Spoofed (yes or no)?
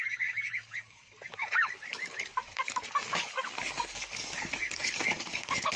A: yes